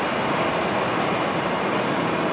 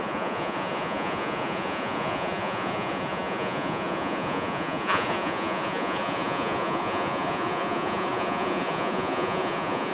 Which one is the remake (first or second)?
second